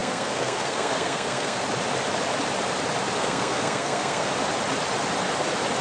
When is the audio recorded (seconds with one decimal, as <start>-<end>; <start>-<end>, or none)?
1.6-3.2; 4.3-5.8